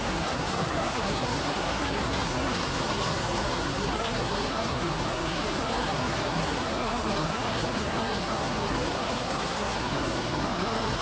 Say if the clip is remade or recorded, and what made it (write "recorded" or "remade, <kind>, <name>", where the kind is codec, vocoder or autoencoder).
remade, codec, SNAC